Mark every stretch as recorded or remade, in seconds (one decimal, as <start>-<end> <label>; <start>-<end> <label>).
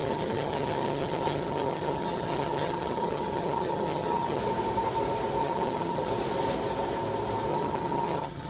0.0-4.4 remade; 4.4-5.4 recorded; 5.4-6.1 remade; 6.1-7.5 recorded; 7.5-8.5 remade